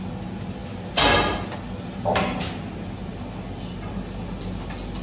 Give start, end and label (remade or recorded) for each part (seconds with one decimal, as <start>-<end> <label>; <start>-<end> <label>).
0.0-5.0 recorded